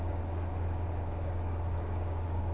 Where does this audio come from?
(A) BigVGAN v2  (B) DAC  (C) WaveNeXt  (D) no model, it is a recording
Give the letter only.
B